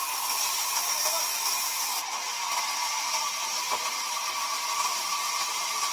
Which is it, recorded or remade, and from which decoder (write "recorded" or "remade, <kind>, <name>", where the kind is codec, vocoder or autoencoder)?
remade, vocoder, BigVGAN v2